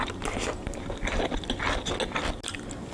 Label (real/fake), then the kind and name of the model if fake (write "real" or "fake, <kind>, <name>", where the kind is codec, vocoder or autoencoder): real